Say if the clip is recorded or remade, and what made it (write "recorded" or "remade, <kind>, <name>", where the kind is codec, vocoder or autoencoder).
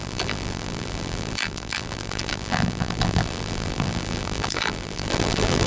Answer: remade, vocoder, BigVGAN v2